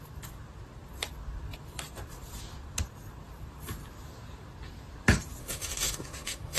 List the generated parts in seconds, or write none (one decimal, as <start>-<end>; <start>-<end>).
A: 5.4-6.6